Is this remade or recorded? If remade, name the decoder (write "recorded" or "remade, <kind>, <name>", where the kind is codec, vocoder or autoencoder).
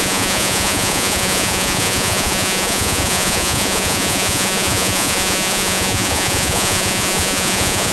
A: remade, vocoder, Vocos